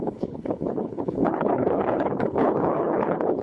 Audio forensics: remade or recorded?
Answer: remade